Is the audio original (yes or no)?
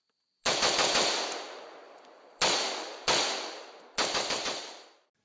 yes